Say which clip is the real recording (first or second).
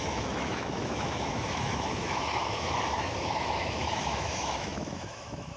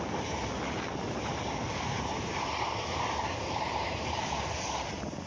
second